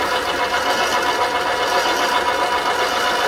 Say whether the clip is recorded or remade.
recorded